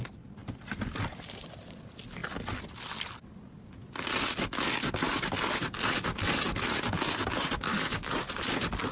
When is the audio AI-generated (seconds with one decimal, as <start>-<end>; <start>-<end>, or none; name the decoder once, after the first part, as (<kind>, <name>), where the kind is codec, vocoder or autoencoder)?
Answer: 0.4-1.8 (vocoder, BigVGAN v2); 7.7-8.5